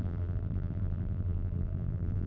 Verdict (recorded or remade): remade